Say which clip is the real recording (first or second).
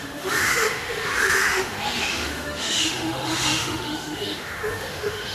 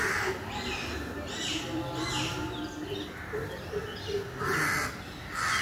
second